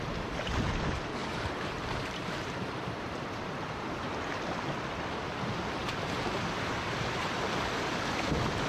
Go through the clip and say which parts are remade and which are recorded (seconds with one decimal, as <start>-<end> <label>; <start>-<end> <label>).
0.0-1.2 recorded; 1.2-4.4 remade; 4.4-5.8 recorded; 5.8-7.5 remade; 7.5-8.7 recorded